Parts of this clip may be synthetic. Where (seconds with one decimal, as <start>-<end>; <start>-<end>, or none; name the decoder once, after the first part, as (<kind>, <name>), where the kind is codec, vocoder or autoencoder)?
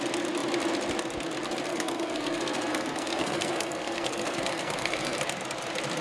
1.7-5.2 (codec, SNAC)